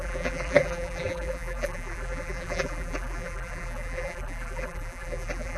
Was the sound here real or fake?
fake